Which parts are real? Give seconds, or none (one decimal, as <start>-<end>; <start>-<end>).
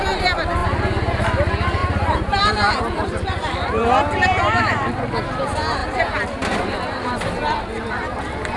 0.0-1.8; 4.9-8.6